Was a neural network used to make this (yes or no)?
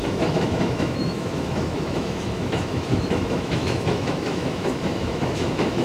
yes